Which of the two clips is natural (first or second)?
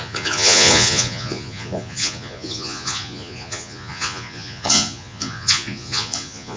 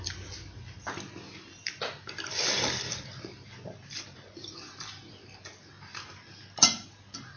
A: second